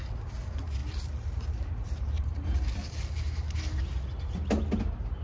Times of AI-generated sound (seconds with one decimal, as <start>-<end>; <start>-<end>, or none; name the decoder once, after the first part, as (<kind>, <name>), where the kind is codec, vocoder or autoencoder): 0.8-3.0 (vocoder, BigVGAN v2)